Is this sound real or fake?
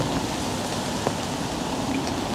real